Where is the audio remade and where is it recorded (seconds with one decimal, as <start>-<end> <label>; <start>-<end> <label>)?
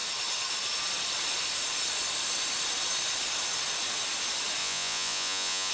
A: 0.0-4.6 recorded; 4.6-5.7 remade